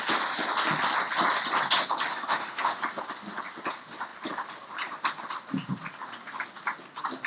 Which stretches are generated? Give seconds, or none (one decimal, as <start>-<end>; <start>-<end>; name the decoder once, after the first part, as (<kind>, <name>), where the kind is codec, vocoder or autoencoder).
2.1-2.8 (autoencoder, DAC-VAE)

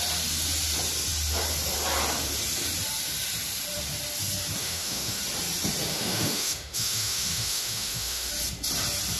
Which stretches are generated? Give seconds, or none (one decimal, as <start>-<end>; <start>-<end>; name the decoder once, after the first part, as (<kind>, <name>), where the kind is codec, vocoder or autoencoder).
4.6-5.2 (autoencoder, DAC-VAE); 5.9-8.3